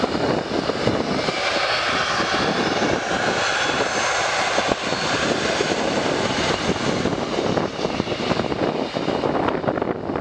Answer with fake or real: real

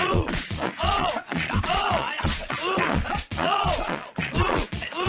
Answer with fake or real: fake